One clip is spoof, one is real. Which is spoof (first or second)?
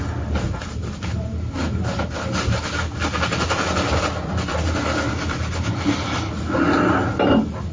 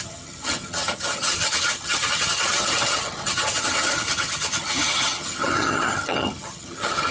second